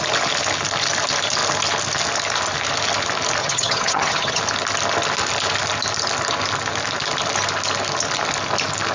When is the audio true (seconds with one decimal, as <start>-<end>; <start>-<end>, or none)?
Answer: 0.0-3.4; 4.4-8.9